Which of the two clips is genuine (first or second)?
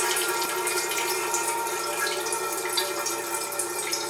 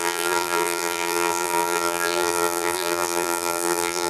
first